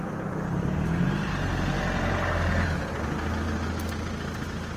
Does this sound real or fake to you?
real